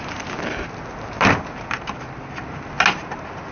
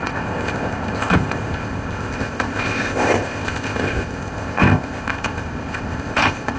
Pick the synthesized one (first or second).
second